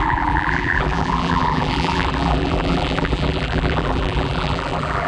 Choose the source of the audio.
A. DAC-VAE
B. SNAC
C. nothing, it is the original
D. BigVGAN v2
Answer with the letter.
D